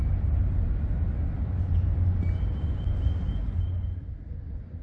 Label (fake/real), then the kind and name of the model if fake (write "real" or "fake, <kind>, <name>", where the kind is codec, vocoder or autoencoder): real